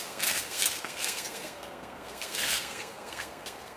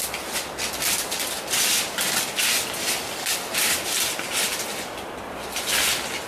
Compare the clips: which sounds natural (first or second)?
second